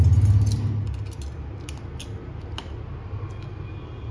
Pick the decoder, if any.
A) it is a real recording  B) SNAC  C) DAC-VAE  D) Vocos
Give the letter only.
A